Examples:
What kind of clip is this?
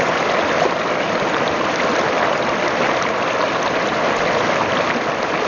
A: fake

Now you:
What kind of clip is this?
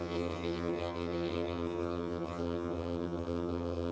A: fake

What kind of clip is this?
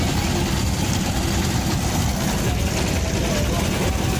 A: real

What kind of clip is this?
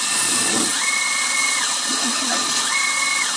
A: fake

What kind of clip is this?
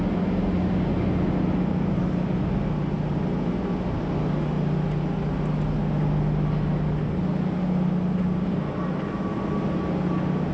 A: real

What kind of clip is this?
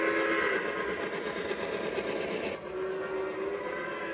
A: real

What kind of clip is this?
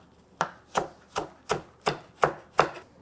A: real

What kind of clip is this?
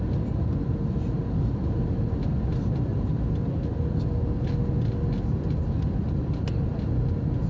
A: real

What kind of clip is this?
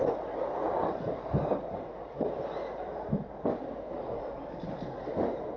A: real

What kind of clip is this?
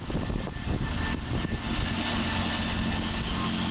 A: real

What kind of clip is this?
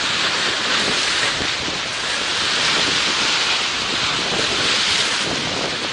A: real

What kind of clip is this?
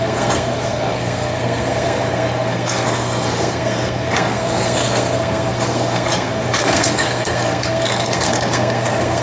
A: fake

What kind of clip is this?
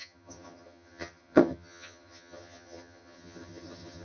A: fake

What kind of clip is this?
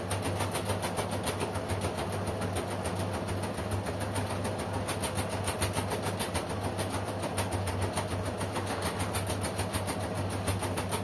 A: real